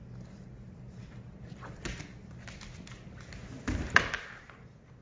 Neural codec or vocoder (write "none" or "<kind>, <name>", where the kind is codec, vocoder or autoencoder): none